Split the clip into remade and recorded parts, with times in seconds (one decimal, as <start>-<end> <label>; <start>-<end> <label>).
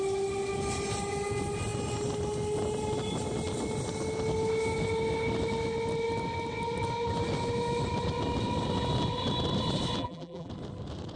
0.0-10.0 recorded; 10.0-10.5 remade; 10.5-11.2 recorded